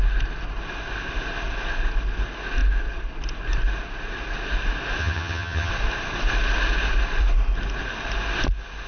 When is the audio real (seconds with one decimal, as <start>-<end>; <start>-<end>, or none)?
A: 0.0-5.0; 5.7-8.9